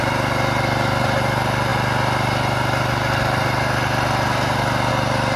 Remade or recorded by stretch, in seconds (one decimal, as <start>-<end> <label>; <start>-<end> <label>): 0.0-5.4 recorded

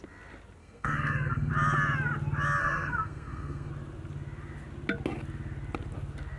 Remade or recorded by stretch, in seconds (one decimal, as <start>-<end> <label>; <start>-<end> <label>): 0.0-0.6 recorded; 0.6-1.5 remade; 1.5-2.6 recorded; 2.6-3.7 remade; 3.7-6.4 recorded

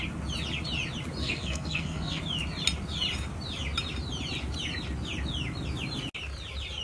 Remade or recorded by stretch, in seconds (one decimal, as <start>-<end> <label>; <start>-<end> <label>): 0.0-1.2 recorded; 1.2-2.2 remade; 2.2-6.8 recorded